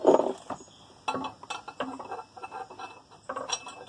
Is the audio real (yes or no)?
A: yes